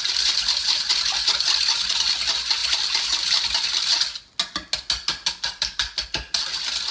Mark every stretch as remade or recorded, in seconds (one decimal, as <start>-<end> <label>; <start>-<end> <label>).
0.0-6.9 recorded

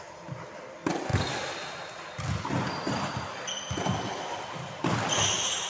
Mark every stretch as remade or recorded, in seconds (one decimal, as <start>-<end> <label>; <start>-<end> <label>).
0.0-5.7 recorded